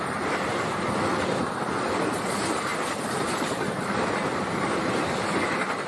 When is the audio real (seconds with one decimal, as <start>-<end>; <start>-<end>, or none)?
none